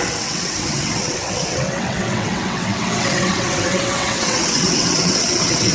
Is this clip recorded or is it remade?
remade